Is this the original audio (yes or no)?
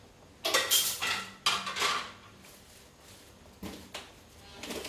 yes